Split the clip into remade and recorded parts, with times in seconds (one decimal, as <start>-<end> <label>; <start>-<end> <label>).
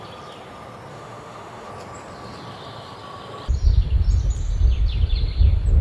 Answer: 0.0-0.9 recorded; 0.9-1.7 remade; 1.7-5.8 recorded